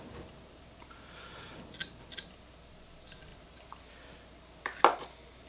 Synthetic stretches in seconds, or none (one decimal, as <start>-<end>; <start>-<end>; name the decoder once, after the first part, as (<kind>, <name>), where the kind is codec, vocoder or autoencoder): 3.3-3.9 (vocoder, BigVGAN v2)